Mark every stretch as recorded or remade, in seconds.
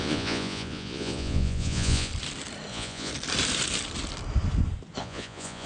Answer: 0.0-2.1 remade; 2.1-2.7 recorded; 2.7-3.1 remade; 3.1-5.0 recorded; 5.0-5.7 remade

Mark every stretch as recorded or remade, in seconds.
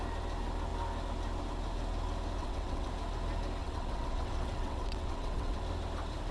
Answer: 0.0-2.4 recorded; 2.4-2.9 remade; 2.9-3.6 recorded; 3.6-5.6 remade; 5.6-6.3 recorded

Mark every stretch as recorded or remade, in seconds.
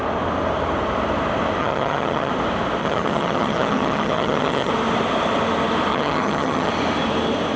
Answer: 0.0-1.6 recorded; 1.6-2.3 remade; 2.3-2.8 recorded; 2.8-4.7 remade; 4.7-5.9 recorded; 5.9-6.7 remade; 6.7-7.6 recorded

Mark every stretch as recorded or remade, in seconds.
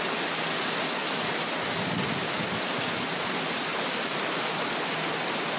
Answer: 0.0-5.6 recorded